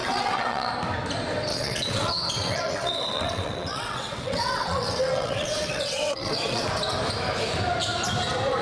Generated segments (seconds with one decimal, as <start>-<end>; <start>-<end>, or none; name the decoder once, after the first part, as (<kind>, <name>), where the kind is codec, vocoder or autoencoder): 0.0-0.7 (vocoder, WaveNeXt); 1.5-6.6